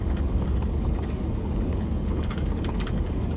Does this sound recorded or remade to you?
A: remade